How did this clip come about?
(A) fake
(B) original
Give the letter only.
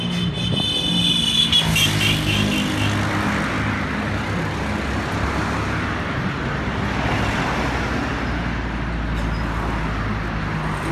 B